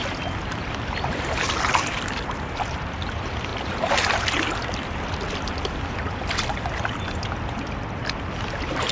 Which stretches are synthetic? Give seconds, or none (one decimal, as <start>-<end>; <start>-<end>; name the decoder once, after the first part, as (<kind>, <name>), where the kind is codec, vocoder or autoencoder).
0.0-3.5 (vocoder, BigVGAN v2); 7.3-8.9